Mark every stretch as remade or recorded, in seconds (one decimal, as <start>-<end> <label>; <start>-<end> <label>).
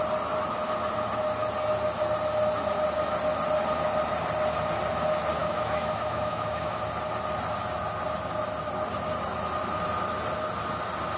0.0-5.4 recorded; 5.4-6.8 remade; 6.8-11.2 recorded